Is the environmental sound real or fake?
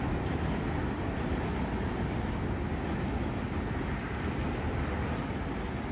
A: real